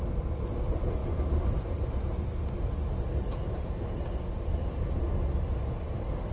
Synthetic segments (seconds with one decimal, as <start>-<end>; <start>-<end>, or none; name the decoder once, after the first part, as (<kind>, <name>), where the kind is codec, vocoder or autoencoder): none